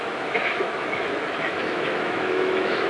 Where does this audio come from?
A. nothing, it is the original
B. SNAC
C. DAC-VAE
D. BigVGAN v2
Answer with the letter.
C